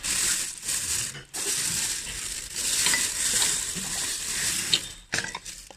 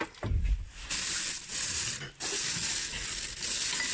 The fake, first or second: first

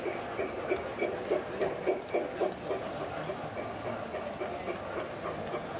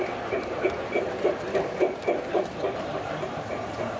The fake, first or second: second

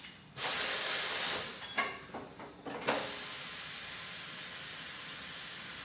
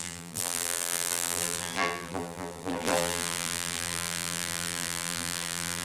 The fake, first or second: second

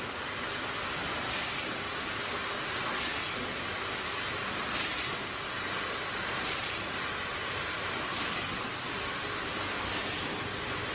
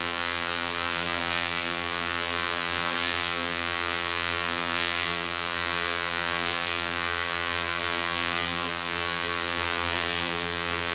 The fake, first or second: second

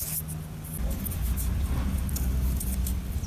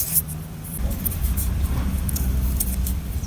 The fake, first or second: second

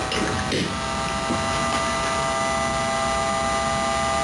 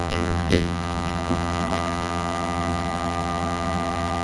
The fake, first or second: second